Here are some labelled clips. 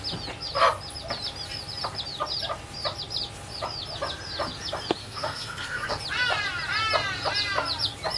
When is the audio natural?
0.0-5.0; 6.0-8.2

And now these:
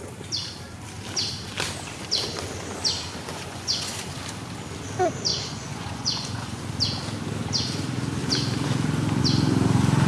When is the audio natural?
0.0-3.3; 3.9-5.3; 6.6-10.1

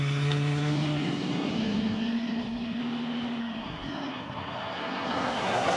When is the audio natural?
2.8-3.4

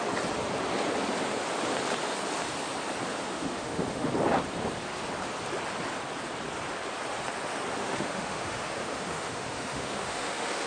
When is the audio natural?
0.0-3.1; 4.1-7.8

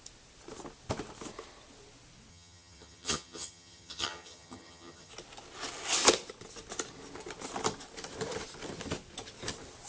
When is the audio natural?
0.0-2.3; 5.1-9.9

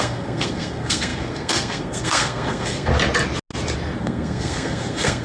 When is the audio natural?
2.9-4.0

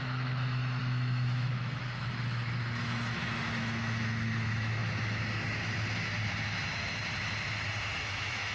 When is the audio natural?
4.8-8.0